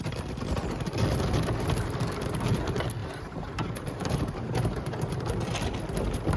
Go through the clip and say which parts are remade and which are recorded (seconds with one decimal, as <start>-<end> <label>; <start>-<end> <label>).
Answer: 0.0-3.0 recorded; 3.0-5.1 remade; 5.1-6.4 recorded